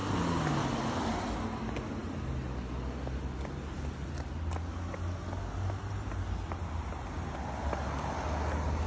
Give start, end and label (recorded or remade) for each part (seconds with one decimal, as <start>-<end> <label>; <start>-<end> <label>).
0.0-8.9 recorded